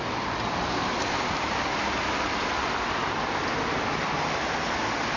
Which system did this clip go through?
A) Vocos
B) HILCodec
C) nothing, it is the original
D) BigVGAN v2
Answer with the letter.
D